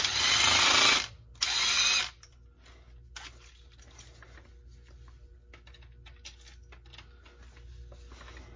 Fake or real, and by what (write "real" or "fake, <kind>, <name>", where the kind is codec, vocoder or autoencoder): real